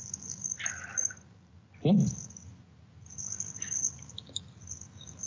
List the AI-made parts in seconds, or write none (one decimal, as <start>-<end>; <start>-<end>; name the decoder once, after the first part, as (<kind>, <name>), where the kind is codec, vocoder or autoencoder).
none